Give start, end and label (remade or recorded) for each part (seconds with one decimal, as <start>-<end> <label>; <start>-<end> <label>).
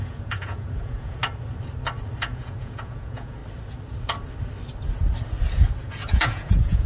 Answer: 0.0-1.2 remade; 1.2-2.2 recorded; 2.2-3.4 remade; 3.4-5.8 recorded; 5.8-6.9 remade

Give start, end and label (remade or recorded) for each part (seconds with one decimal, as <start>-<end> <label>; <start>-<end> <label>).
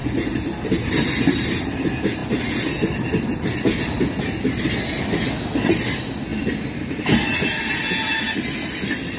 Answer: 0.0-0.7 remade; 0.7-9.2 recorded